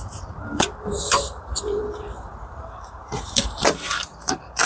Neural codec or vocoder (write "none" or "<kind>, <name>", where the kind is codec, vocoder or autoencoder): vocoder, BigVGAN v2